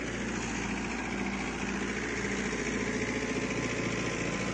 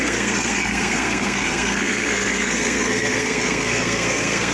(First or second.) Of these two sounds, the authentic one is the first